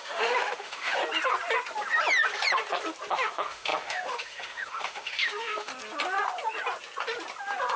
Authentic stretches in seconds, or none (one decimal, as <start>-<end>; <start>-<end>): 1.0-3.1; 5.7-7.8